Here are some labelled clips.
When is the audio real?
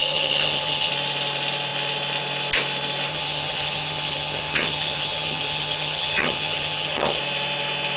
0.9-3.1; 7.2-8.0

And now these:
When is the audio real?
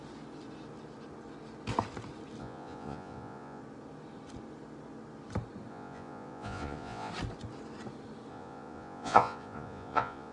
0.0-2.4; 3.6-5.7; 7.1-8.3